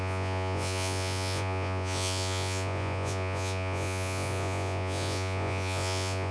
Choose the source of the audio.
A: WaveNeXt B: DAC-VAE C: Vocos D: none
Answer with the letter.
C